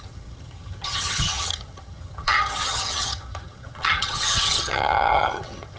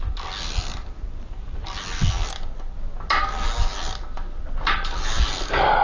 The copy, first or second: first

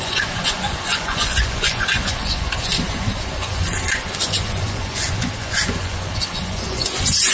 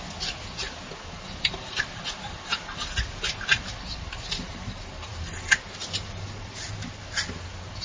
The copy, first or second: first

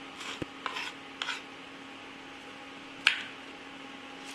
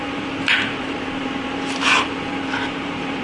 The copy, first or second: second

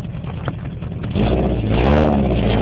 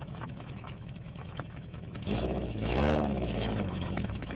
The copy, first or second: second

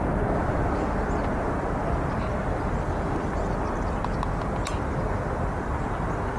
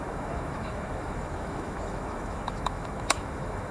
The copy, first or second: second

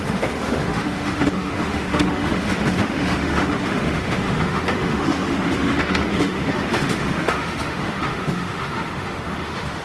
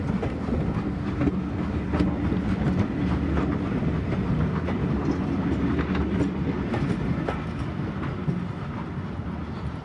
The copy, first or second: first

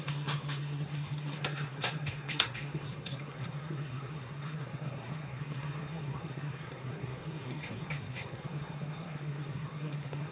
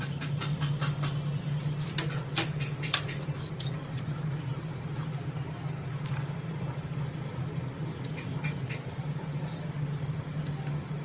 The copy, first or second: first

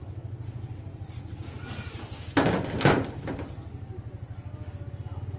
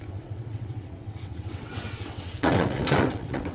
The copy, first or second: second